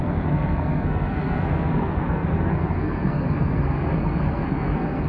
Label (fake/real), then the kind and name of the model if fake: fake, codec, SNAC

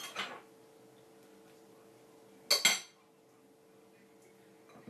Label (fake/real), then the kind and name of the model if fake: real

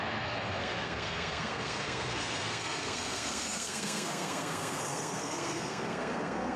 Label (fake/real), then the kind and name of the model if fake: fake, codec, SNAC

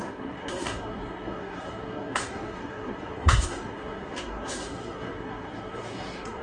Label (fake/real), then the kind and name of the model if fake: fake, codec, SNAC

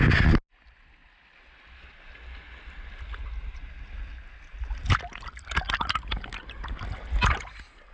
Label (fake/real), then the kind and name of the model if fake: real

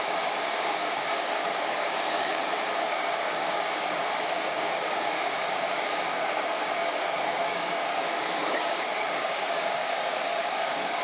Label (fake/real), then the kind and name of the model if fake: fake, codec, DAC